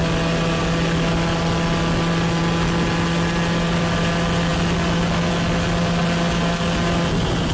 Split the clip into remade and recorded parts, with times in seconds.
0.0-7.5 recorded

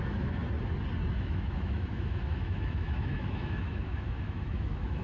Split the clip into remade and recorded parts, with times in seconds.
0.0-0.4 remade; 0.4-1.1 recorded; 1.1-5.0 remade

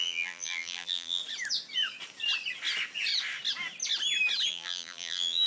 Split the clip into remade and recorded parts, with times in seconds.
0.0-1.2 remade; 1.2-4.5 recorded; 4.5-5.5 remade

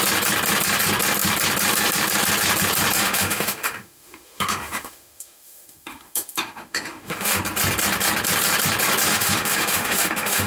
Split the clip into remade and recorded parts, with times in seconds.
0.0-3.0 recorded; 3.0-7.4 remade; 7.4-9.1 recorded; 9.1-10.5 remade